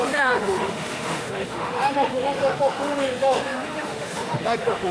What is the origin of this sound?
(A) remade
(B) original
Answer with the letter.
A